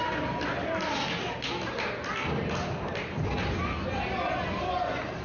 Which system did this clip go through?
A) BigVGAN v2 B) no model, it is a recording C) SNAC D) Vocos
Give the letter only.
B